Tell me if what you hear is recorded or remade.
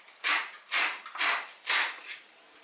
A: remade